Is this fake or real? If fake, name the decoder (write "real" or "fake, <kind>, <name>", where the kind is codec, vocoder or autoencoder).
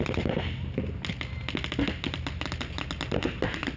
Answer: real